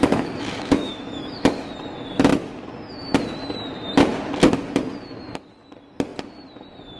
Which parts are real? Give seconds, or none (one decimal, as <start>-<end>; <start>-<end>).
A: 1.7-7.0